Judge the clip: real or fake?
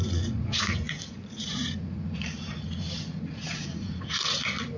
fake